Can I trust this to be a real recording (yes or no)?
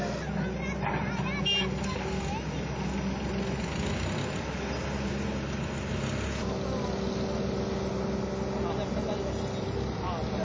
yes